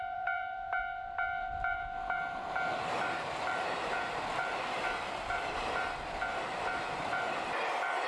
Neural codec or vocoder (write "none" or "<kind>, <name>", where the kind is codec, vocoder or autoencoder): vocoder, BigVGAN v2